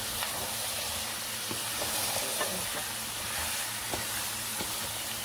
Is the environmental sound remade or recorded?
recorded